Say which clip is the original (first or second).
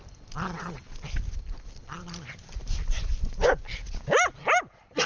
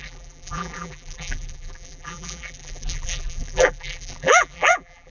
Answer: first